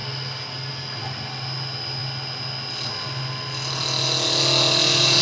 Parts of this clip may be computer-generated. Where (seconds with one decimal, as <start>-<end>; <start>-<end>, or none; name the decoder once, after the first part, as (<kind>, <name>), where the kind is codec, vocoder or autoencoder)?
none

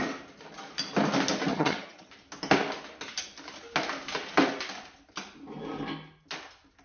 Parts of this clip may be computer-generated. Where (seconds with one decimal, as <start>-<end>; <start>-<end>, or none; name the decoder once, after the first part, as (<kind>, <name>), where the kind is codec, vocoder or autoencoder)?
1.5-2.1 (vocoder, HiFi-GAN)

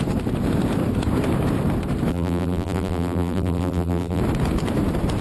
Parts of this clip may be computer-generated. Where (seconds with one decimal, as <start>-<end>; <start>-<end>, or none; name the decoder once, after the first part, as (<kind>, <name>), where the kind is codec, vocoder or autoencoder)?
2.1-4.2 (vocoder, BigVGAN v2)

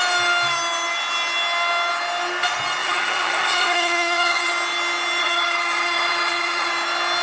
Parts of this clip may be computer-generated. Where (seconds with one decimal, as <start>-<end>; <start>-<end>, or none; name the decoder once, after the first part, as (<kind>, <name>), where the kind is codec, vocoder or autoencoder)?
2.8-4.5 (vocoder, HiFi-GAN); 5.2-6.7

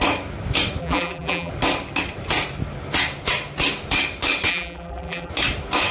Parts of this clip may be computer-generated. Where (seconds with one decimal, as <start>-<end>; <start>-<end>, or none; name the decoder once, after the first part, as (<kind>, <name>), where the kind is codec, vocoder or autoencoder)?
0.8-1.5 (vocoder, BigVGAN v2); 4.5-5.3

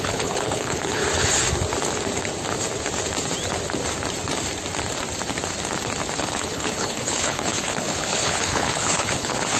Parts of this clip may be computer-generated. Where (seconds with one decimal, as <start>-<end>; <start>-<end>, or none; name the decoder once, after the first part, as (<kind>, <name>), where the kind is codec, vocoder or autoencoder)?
0.0-1.0 (codec, HILCodec); 6.2-9.6

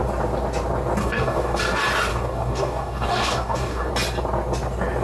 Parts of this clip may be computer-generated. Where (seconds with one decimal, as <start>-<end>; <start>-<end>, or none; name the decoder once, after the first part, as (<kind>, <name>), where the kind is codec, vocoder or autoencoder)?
1.0-1.6 (codec, DAC); 2.1-3.9